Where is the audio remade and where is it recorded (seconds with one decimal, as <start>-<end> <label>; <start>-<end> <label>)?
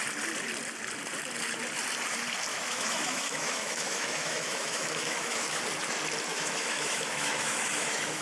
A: 0.0-2.5 recorded; 2.5-5.6 remade; 5.6-6.3 recorded; 6.3-8.2 remade